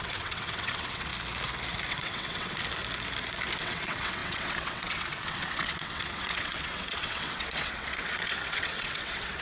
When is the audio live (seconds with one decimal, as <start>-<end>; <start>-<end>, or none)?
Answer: 1.1-1.9; 2.6-3.6